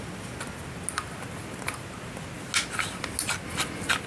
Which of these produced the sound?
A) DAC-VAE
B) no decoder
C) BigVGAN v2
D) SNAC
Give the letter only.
B